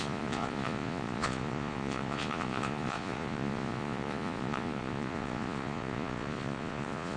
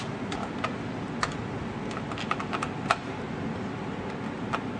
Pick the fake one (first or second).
first